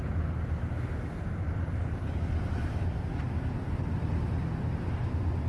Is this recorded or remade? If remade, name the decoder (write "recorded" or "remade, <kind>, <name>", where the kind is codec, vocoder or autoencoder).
recorded